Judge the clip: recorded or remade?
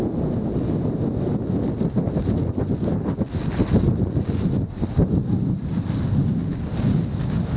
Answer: recorded